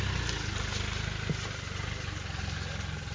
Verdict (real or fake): real